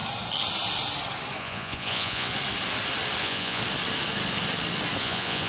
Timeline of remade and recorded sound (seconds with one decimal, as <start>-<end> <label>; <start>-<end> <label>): 0.0-1.4 recorded; 1.4-2.3 remade; 2.3-3.2 recorded; 3.2-3.6 remade; 3.6-5.0 recorded; 5.0-5.5 remade